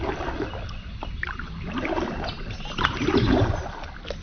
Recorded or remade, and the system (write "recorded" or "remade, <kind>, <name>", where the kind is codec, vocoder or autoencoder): recorded